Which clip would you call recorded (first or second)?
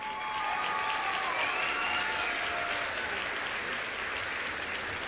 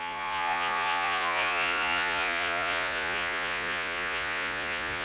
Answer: first